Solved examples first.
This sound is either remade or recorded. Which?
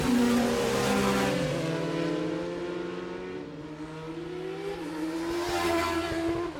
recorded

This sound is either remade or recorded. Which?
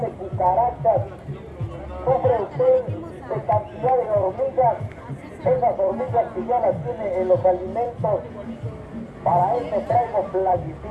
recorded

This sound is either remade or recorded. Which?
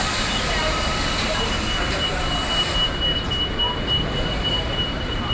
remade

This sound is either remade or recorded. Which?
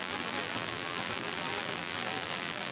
remade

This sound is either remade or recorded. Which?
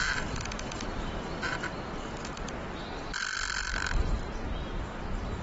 remade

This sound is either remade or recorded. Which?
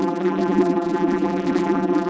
remade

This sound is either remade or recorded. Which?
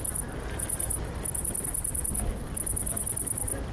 recorded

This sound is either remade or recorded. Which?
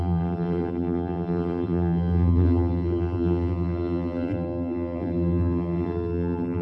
remade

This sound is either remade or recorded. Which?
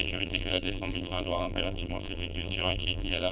remade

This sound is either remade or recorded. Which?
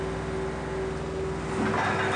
recorded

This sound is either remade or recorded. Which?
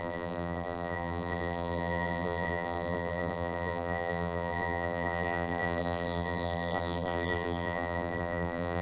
remade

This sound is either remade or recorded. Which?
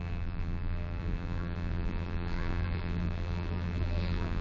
remade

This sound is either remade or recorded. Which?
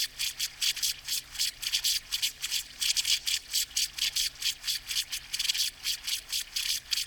recorded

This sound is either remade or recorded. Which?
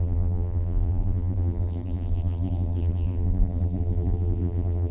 remade